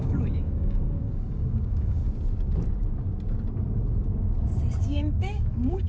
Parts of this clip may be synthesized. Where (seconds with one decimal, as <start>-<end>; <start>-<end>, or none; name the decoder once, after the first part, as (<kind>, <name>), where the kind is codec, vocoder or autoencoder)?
0.0-2.0 (codec, DAC); 4.8-5.9